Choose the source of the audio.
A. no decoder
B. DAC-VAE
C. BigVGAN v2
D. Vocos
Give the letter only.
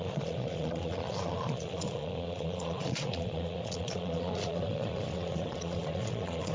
D